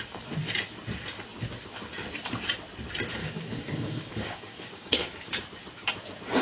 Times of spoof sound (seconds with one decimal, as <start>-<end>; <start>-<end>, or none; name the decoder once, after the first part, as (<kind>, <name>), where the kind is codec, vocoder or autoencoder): 3.2-5.3 (codec, DAC)